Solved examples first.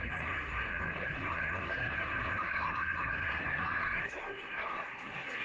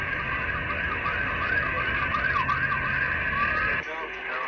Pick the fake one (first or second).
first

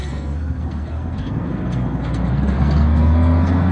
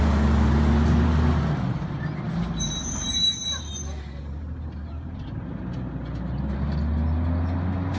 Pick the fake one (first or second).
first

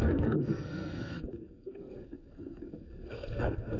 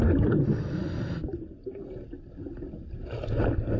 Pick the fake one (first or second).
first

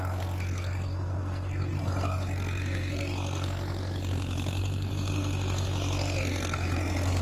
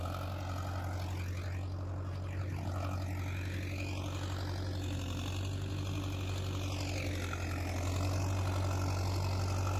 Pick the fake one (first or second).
first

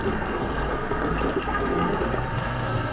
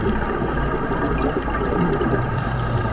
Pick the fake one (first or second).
first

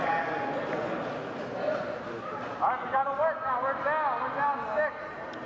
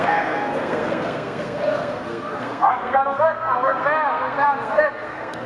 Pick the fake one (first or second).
second